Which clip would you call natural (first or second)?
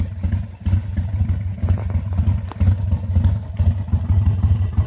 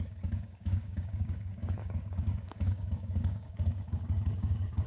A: first